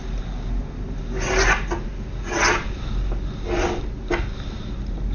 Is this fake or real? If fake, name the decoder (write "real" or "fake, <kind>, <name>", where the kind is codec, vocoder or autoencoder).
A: real